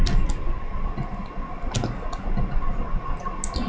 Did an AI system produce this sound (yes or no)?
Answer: no